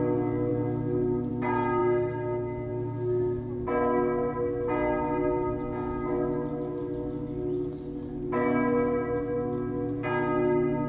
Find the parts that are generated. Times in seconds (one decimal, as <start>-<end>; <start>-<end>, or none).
none